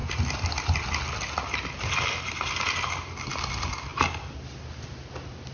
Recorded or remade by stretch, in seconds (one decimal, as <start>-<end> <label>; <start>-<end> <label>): 0.0-5.5 recorded